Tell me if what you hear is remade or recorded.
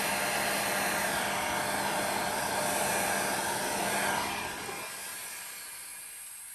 recorded